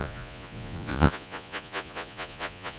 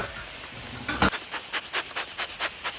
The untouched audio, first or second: second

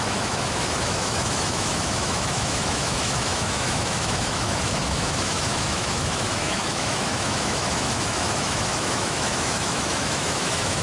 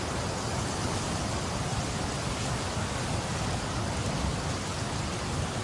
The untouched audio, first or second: second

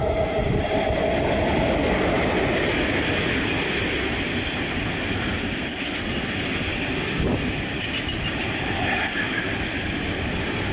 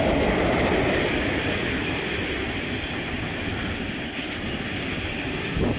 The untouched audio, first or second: first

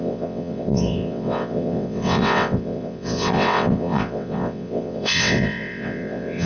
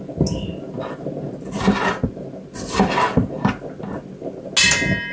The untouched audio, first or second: second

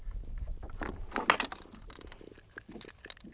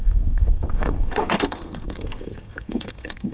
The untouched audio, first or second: first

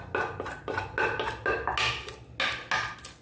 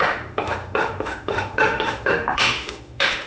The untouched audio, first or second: first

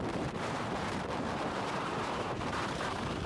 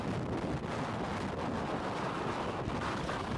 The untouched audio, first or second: second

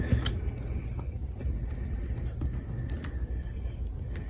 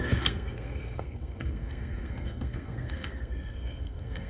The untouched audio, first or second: first